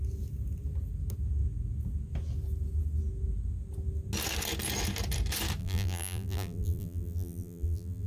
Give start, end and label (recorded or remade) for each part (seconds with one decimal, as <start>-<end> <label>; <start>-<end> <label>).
0.0-5.6 recorded; 5.6-8.1 remade